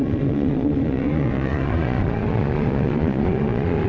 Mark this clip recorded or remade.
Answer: remade